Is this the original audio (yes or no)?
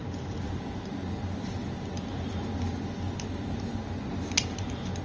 yes